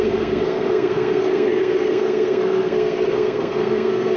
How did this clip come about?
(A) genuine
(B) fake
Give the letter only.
B